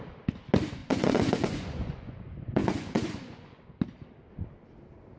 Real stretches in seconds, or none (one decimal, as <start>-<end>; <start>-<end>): 0.0-0.8; 3.6-5.2